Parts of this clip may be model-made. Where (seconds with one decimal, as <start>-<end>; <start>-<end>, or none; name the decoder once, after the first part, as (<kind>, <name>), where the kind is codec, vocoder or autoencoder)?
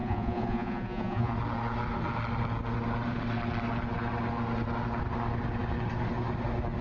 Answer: 0.0-1.3 (vocoder, Vocos)